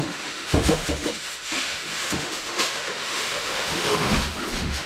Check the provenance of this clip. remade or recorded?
remade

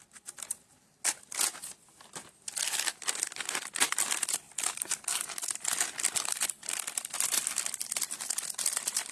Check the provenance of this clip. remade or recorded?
recorded